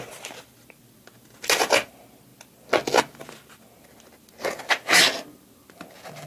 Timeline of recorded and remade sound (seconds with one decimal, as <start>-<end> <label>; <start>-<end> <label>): 0.0-6.3 recorded